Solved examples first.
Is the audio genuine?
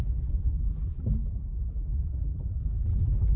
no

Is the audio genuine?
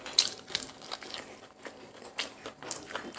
yes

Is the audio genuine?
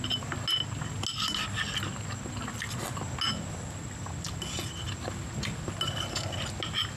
yes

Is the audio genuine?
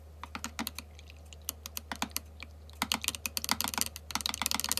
yes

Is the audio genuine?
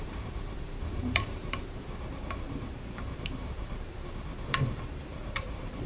no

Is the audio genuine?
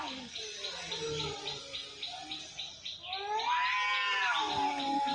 yes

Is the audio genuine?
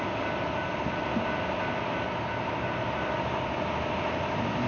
yes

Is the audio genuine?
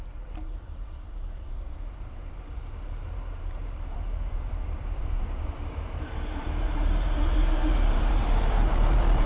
no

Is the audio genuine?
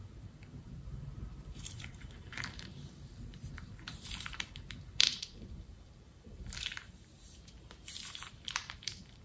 no